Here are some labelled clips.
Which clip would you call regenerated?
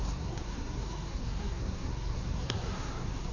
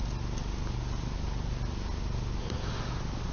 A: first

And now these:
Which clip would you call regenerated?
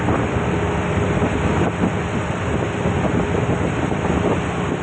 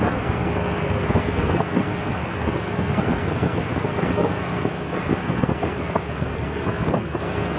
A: second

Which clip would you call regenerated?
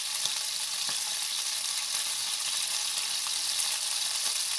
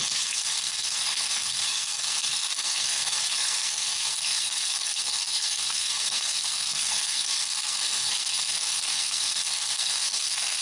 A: second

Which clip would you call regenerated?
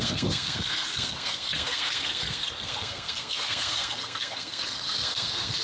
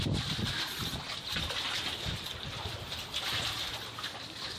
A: first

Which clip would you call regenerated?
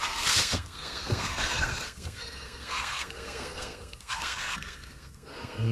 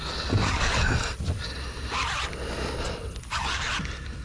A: first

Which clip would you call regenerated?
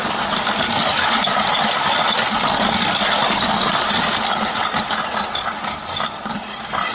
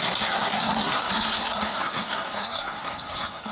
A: second